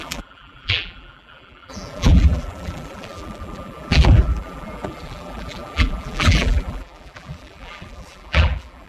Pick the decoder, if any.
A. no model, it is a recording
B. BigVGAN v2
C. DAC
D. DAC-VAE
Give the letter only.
B